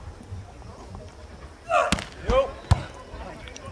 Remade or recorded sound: recorded